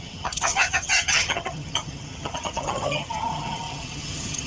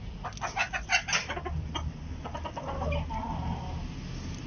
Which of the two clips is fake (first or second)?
first